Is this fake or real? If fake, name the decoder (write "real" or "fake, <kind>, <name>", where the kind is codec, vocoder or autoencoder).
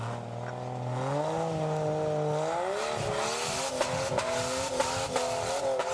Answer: real